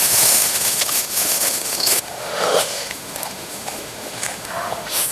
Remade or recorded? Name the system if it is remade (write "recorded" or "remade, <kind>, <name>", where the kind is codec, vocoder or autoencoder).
remade, autoencoder, DAC-VAE